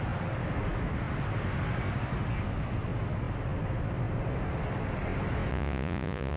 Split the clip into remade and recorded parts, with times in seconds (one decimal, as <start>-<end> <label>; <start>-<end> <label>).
0.0-5.5 recorded; 5.5-6.4 remade